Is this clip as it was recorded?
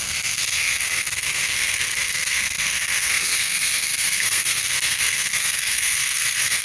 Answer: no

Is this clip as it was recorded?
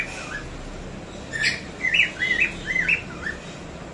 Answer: yes